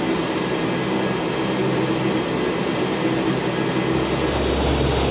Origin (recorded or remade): recorded